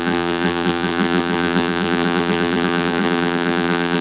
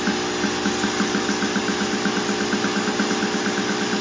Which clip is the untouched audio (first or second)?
second